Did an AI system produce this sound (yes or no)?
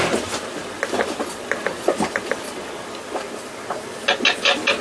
no